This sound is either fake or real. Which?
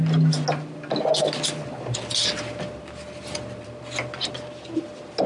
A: real